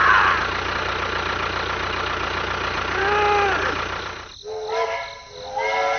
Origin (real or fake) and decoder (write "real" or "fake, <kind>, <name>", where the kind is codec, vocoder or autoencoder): real